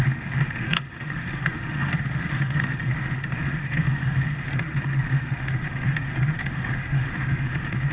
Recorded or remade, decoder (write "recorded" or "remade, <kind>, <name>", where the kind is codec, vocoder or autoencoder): remade, autoencoder, DAC-VAE